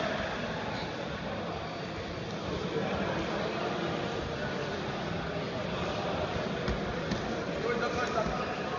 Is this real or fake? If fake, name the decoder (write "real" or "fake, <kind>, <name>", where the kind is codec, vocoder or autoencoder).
real